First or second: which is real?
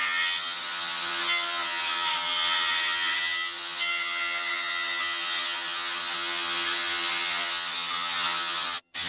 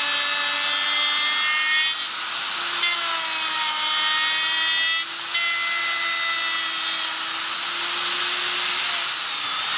second